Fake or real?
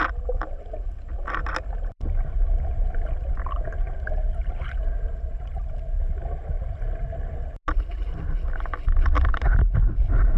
real